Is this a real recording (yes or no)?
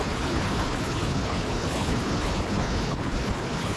no